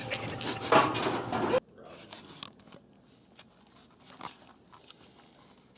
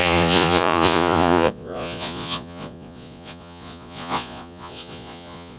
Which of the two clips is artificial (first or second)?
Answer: second